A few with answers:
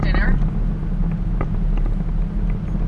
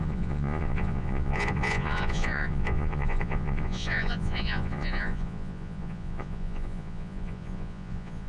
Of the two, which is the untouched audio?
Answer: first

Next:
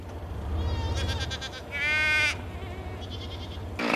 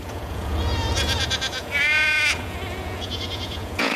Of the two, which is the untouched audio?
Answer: first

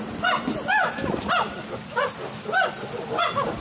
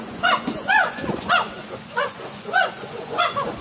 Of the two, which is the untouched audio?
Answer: first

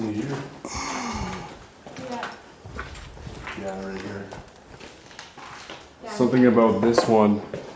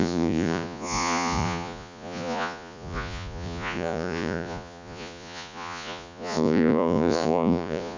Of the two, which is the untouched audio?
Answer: first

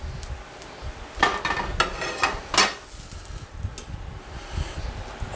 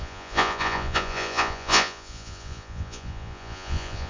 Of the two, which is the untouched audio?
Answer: first